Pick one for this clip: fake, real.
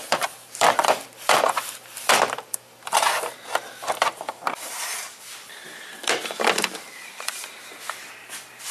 fake